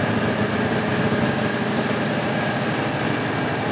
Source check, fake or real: real